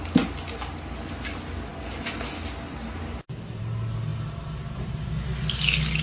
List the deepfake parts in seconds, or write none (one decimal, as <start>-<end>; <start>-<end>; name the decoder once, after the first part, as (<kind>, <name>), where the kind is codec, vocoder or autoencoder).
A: none